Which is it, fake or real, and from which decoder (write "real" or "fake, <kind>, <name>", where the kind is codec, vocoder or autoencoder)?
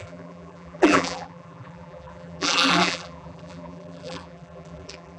fake, vocoder, BigVGAN v2